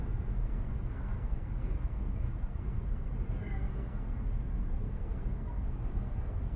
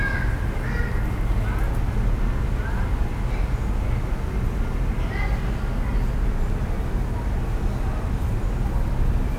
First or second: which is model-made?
first